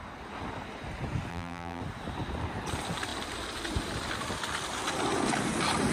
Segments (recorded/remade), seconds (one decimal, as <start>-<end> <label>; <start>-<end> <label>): 0.0-1.3 recorded; 1.3-1.8 remade; 1.8-5.9 recorded